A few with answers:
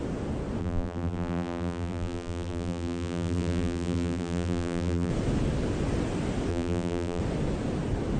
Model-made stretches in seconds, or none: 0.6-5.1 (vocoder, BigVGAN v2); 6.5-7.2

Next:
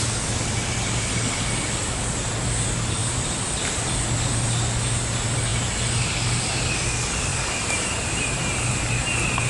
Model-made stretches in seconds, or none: 3.0-3.6 (vocoder, BigVGAN v2); 7.3-8.4

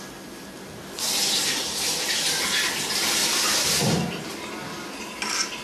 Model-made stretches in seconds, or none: 3.2-4.2 (vocoder, BigVGAN v2)

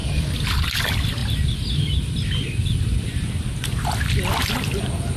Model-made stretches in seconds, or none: 0.0-0.6 (vocoder, BigVGAN v2)

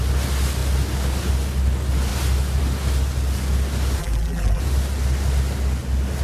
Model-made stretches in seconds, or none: 4.0-4.6 (vocoder, BigVGAN v2)

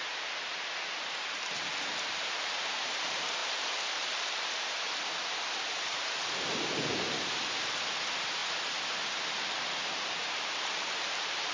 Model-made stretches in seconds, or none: 0.0-8.4 (vocoder, BigVGAN v2); 9.8-11.5